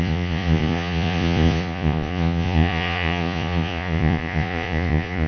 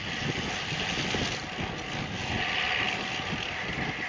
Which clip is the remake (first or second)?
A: first